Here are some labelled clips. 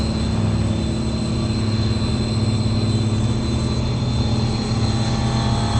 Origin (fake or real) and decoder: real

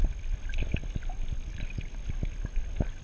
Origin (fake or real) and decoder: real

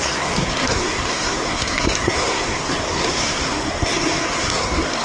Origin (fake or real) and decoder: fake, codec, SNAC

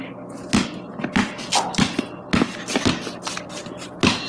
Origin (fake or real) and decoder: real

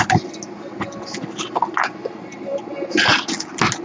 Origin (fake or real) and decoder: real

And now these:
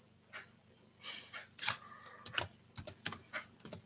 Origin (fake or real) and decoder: real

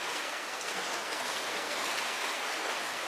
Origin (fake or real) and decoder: fake, codec, SNAC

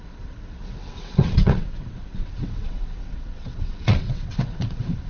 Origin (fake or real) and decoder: fake, vocoder, WaveNeXt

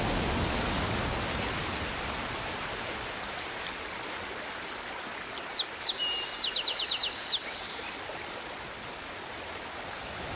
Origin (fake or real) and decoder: real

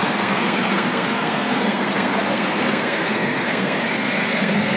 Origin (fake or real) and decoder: fake, codec, SNAC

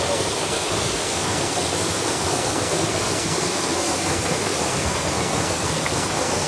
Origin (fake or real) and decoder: fake, codec, SNAC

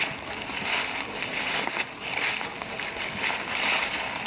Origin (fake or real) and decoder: real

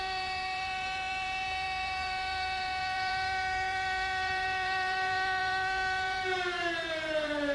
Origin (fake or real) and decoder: fake, vocoder, BigVGAN v2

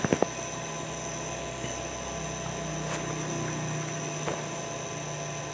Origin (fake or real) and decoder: real